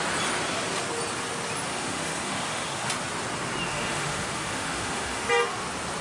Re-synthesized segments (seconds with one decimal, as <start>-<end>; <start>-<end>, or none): 1.7-2.9; 3.7-5.3